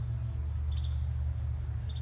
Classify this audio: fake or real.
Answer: real